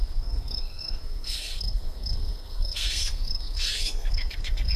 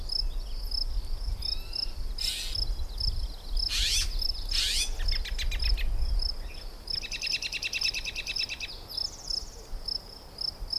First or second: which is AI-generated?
first